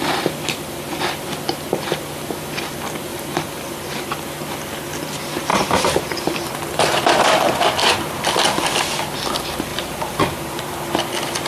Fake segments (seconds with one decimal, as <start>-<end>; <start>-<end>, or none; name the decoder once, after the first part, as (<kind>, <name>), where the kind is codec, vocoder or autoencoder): 3.1-4.0 (vocoder, BigVGAN v2); 5.5-6.5; 7.8-8.3; 9.7-10.6